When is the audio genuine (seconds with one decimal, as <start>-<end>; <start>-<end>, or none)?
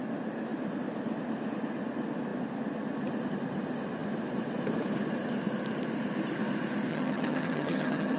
0.0-6.9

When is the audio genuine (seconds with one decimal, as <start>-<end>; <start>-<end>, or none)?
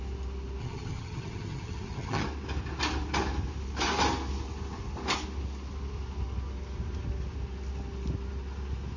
0.0-0.6; 2.2-9.0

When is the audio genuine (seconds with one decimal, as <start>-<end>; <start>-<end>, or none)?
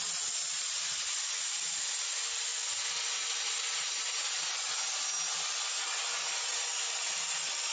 0.0-7.7